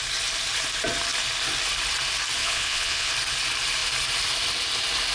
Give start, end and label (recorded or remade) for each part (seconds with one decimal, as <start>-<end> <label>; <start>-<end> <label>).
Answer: 0.0-2.4 recorded; 2.4-3.1 remade; 3.1-5.1 recorded

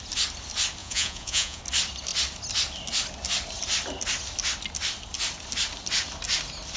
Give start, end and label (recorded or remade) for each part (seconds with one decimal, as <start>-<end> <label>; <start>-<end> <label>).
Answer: 0.0-0.8 recorded; 0.8-1.6 remade; 1.6-6.8 recorded